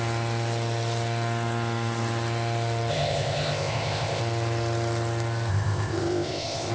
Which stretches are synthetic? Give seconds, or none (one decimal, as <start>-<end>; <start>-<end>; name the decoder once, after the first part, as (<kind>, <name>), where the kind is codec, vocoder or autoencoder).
2.9-4.2 (codec, ZipCodec); 5.5-6.7